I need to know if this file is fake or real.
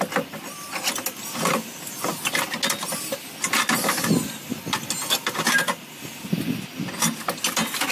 real